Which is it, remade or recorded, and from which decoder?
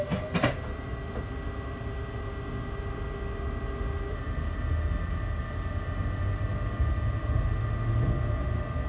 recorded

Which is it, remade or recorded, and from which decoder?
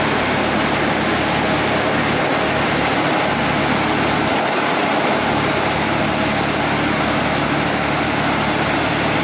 recorded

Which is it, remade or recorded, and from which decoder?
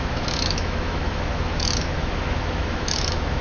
remade, autoencoder, DAC-VAE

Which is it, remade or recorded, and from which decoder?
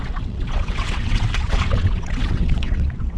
remade, vocoder, WaveNeXt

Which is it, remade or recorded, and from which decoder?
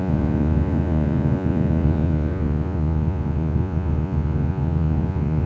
remade, vocoder, Vocos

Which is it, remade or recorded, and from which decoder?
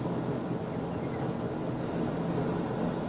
recorded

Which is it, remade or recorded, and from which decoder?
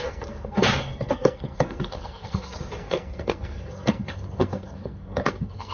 remade, codec, SNAC